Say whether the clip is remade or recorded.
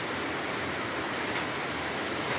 recorded